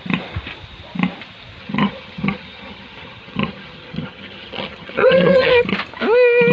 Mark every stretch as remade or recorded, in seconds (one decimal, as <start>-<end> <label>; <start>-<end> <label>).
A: 0.0-1.6 recorded; 1.6-5.5 remade; 5.5-6.5 recorded